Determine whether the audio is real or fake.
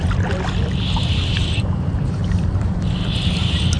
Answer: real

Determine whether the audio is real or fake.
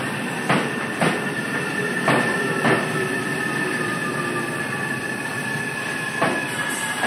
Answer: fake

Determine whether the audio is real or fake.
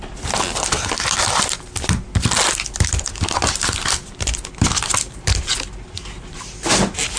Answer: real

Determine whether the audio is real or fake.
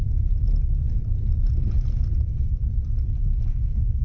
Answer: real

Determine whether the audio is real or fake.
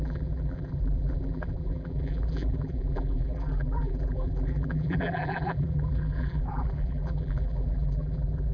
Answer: fake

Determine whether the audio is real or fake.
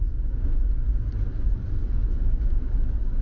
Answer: real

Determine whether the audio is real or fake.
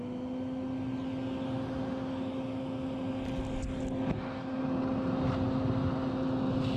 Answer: real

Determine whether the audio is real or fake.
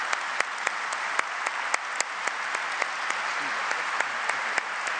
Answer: real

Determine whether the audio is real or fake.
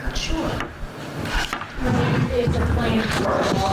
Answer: fake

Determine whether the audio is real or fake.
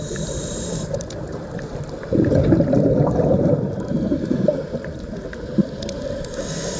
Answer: fake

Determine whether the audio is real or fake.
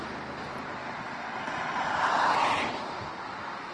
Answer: real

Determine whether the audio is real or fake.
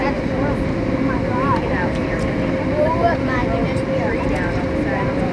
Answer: fake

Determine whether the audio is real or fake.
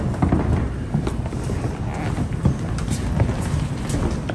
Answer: real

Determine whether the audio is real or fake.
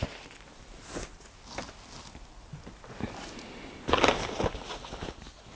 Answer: real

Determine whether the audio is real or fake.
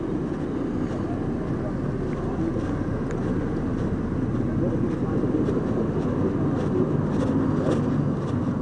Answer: real